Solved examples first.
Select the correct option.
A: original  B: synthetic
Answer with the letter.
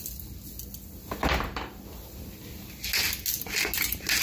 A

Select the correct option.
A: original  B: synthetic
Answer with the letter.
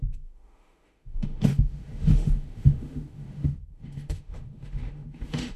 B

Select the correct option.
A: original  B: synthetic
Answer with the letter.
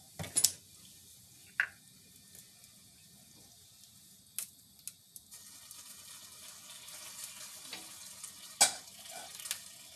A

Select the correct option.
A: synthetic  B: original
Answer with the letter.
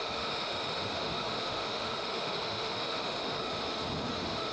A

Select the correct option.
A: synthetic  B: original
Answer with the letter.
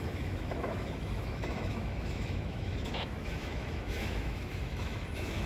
A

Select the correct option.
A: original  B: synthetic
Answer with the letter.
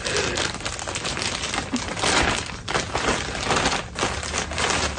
A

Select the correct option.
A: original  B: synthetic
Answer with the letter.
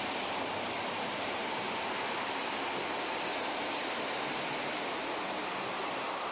A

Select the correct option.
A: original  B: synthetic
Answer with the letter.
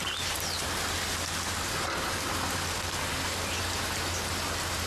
A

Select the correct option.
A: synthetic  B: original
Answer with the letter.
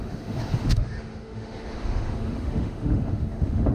A